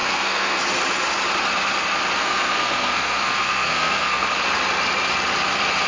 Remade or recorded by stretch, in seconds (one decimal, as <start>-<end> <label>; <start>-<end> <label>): 0.0-0.6 remade; 0.6-2.2 recorded; 2.2-4.3 remade; 4.3-5.9 recorded